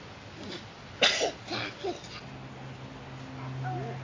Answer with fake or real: real